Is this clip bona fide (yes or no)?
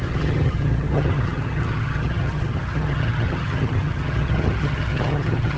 no